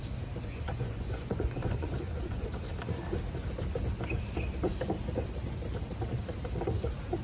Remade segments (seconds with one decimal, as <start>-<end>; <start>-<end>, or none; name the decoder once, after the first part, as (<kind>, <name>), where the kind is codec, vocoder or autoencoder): 0.4-2.6 (vocoder, Vocos)